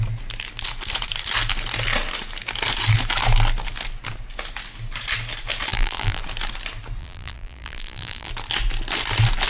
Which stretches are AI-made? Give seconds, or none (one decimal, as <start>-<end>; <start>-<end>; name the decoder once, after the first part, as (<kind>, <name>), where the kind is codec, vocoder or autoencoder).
5.7-6.2 (vocoder, BigVGAN v2); 7.0-8.3